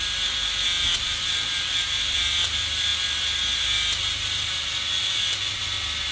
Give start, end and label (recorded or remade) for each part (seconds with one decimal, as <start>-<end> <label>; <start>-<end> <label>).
0.0-6.1 recorded